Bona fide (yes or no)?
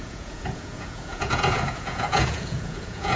no